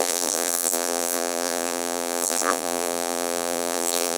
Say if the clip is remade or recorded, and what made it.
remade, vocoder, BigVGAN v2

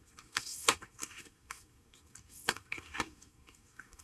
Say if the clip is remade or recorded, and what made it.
remade, codec, SNAC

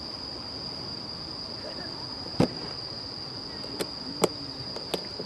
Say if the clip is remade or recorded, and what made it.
recorded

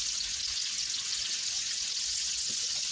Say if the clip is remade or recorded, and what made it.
remade, vocoder, Vocos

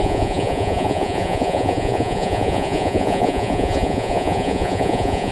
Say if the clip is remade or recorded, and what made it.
remade, vocoder, Vocos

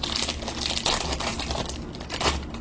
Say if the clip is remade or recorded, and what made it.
recorded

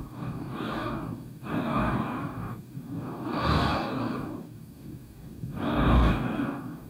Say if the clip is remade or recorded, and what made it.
remade, codec, DAC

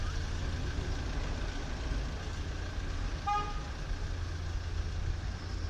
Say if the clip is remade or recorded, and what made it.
recorded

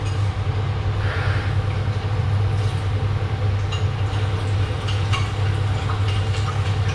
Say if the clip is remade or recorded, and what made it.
recorded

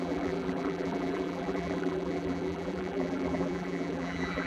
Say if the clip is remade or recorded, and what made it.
remade, vocoder, BigVGAN v2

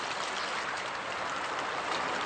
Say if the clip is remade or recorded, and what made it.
recorded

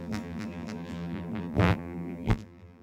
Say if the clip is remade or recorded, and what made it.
remade, vocoder, BigVGAN v2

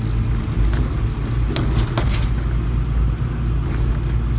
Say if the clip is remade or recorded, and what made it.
recorded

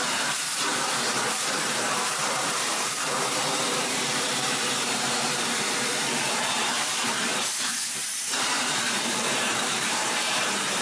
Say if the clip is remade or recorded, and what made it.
remade, vocoder, BigVGAN v2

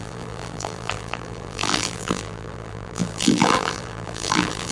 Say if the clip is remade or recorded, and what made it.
remade, vocoder, BigVGAN v2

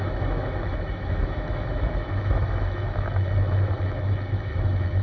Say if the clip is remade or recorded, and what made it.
remade, autoencoder, DAC-VAE